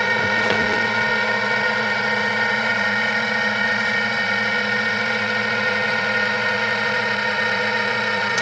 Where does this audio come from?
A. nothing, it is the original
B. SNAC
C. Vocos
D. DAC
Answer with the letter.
C